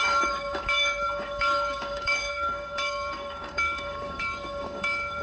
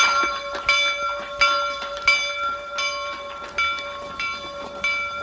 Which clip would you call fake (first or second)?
first